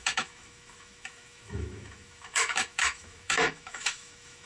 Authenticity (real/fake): fake